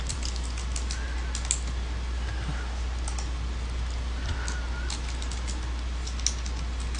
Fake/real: real